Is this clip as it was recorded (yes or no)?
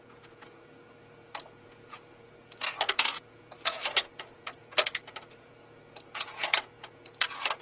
no